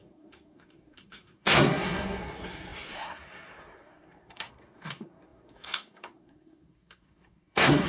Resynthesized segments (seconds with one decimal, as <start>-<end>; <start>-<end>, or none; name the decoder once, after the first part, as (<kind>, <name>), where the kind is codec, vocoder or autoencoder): 0.0-7.9 (codec, SNAC)